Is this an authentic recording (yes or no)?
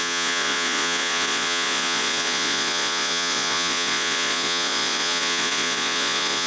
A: no